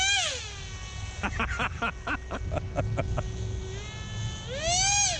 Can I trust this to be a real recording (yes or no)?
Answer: yes